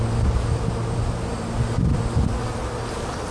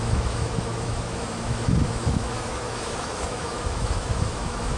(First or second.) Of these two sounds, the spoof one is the second